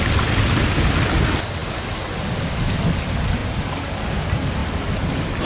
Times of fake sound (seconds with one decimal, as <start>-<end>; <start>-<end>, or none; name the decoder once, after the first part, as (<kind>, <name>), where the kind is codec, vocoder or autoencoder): none